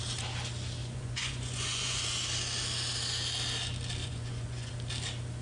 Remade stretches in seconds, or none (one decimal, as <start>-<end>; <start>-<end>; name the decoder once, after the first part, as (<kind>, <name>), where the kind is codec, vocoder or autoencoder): 0.8-2.0 (vocoder, Vocos); 4.0-4.7